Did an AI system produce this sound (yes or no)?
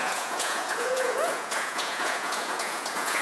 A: yes